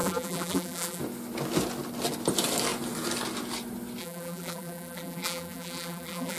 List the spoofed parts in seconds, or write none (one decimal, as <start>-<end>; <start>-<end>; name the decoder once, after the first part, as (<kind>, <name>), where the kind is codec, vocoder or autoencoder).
0.0-1.0 (vocoder, BigVGAN v2); 4.0-6.4